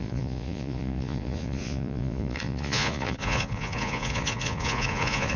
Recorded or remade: remade